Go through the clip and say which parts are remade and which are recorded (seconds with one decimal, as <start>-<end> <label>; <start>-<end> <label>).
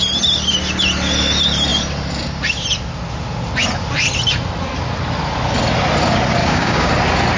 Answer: 0.0-6.4 recorded; 6.4-6.9 remade; 6.9-7.4 recorded